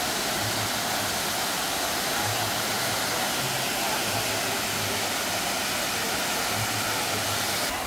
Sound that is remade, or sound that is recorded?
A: recorded